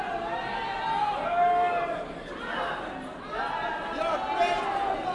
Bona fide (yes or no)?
yes